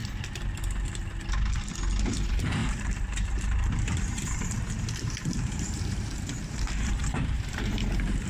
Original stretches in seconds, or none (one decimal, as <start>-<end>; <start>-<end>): 0.0-2.1